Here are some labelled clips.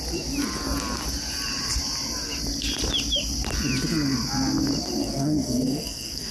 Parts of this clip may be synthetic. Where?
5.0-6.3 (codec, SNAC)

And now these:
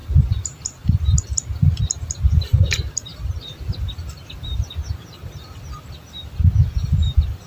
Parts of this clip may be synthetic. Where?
none

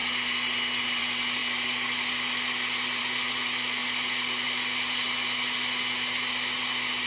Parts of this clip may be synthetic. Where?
none

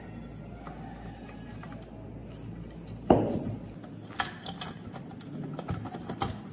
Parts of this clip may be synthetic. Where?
none